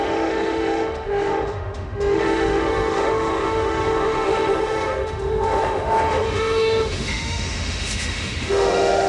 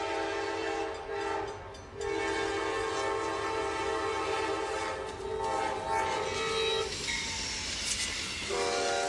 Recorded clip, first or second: second